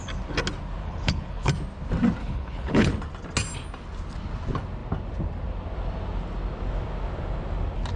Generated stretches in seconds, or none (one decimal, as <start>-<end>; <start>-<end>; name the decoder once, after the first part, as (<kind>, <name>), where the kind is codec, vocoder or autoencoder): 0.8-1.5 (codec, HILCodec); 2.2-2.9